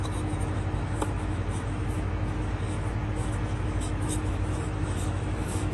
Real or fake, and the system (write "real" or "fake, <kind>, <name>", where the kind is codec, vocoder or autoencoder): fake, autoencoder, DAC-VAE